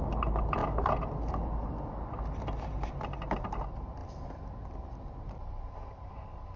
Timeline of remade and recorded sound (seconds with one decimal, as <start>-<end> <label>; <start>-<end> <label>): 0.0-6.6 recorded